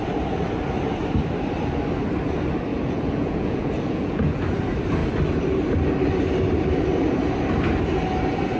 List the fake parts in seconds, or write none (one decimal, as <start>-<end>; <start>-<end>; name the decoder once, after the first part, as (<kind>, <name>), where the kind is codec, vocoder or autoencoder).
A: 2.7-4.4 (vocoder, Vocos)